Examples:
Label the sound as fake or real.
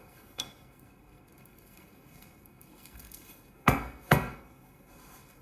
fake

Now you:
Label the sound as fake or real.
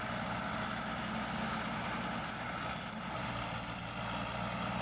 real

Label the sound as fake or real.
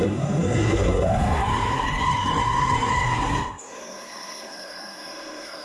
fake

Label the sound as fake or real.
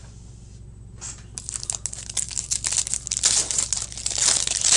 real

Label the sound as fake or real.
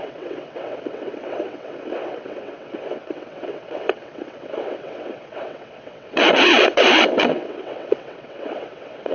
fake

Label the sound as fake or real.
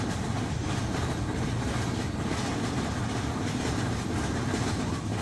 real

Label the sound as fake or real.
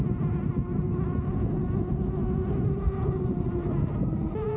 real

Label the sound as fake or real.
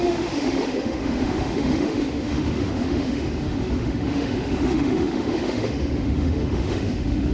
fake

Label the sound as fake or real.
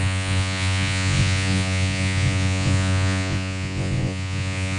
fake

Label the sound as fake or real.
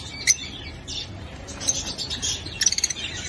real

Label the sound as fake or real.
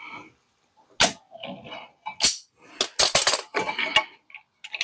real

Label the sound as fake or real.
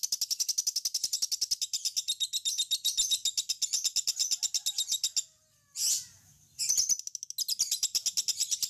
real